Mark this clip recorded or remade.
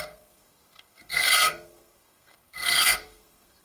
remade